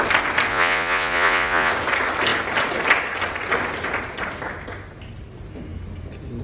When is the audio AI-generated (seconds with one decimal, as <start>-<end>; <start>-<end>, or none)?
0.5-1.7